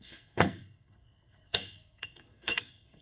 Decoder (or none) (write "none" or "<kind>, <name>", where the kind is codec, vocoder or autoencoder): codec, SNAC